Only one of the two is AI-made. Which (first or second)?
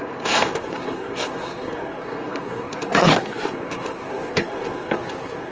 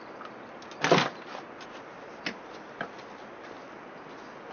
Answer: first